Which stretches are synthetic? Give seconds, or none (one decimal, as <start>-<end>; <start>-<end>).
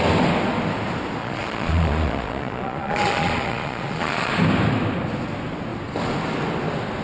1.2-4.3